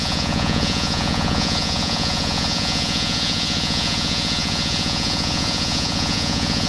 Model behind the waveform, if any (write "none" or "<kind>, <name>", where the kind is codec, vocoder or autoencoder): vocoder, Vocos